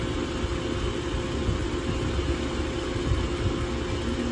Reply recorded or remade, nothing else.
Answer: recorded